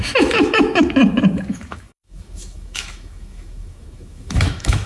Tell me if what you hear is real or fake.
fake